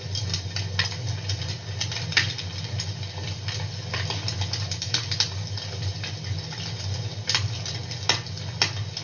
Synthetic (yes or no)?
no